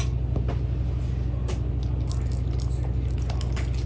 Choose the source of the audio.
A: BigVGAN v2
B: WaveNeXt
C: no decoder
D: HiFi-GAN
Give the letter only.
C